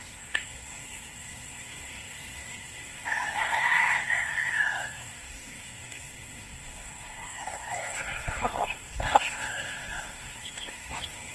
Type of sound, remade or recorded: remade